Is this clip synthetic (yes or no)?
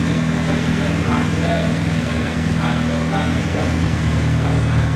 yes